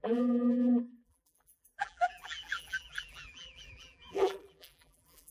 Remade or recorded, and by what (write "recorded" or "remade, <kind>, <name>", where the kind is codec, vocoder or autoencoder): remade, vocoder, BigVGAN v2